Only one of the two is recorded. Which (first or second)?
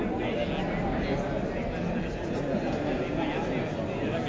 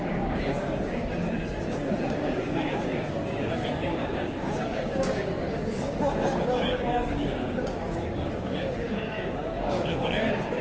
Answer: first